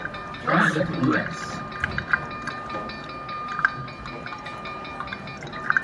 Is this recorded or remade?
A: recorded